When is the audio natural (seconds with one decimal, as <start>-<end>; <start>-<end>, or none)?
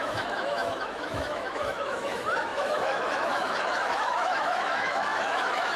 none